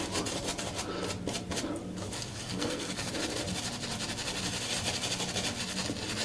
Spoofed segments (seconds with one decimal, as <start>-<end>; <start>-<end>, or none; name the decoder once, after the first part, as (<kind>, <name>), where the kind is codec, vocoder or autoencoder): 2.3-3.1 (codec, SNAC)